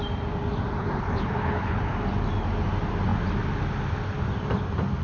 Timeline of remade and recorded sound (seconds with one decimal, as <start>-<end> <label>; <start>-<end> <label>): 0.0-0.8 recorded; 0.8-1.9 remade; 1.9-5.0 recorded